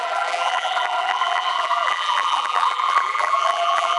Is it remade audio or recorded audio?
remade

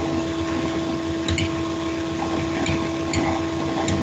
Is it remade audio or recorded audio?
recorded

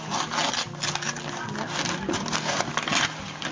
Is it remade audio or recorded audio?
recorded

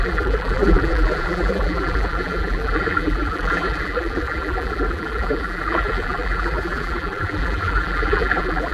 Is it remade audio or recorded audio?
remade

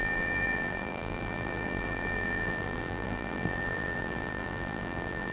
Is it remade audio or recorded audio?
remade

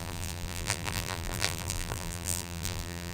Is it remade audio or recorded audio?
remade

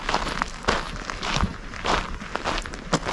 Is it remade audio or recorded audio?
recorded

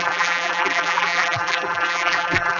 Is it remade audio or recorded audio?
remade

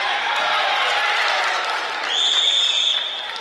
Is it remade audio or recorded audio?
remade